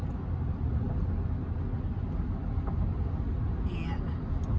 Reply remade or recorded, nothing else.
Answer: recorded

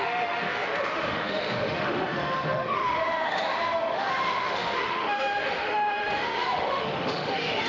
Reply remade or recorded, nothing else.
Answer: remade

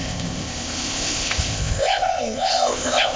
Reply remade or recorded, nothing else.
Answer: remade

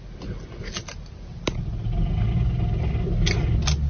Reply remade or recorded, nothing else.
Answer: recorded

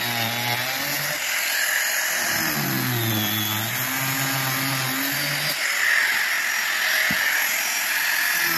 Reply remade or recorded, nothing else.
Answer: recorded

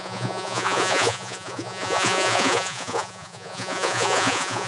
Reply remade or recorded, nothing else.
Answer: remade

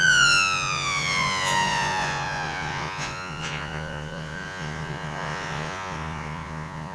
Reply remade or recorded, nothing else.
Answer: remade